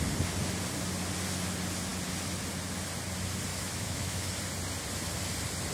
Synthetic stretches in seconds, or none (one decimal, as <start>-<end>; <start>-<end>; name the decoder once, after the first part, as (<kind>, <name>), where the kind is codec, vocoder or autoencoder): 3.5-4.3 (autoencoder, DAC-VAE)